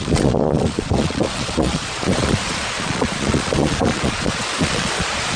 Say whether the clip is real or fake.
fake